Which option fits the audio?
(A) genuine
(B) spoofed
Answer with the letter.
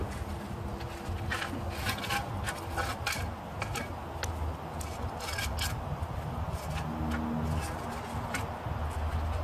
A